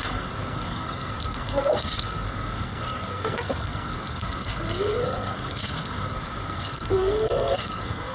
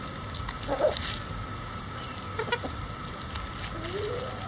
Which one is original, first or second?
second